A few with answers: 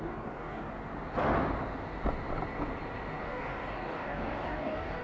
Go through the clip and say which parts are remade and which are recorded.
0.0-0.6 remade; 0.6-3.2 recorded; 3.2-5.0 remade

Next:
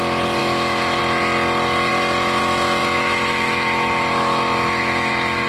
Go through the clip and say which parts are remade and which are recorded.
0.0-0.4 recorded; 0.4-1.0 remade; 1.0-2.8 recorded; 2.8-5.5 remade

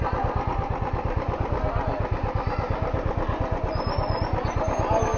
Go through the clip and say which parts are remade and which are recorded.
0.0-5.2 recorded

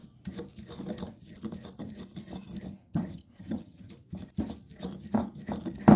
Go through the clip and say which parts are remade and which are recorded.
0.0-2.7 recorded; 2.7-3.9 remade; 3.9-6.0 recorded

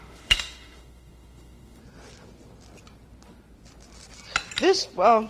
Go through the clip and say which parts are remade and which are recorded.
0.0-1.8 remade; 1.8-5.3 recorded

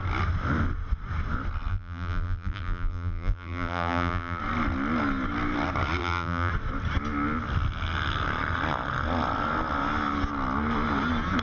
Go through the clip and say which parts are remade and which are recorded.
0.0-1.7 recorded; 1.7-4.4 remade; 4.4-6.0 recorded; 6.0-6.5 remade; 6.5-11.4 recorded